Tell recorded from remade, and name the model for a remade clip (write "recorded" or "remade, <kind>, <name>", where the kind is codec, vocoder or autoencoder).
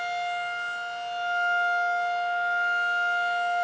recorded